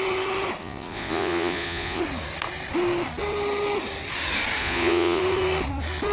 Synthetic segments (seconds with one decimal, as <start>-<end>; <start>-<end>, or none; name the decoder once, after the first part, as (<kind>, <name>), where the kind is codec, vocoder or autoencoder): 0.6-2.0 (vocoder, Vocos); 4.6-5.2